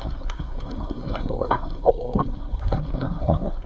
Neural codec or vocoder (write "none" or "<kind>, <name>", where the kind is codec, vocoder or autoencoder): codec, SNAC